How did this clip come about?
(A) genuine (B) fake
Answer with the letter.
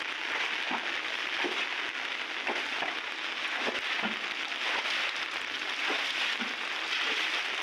A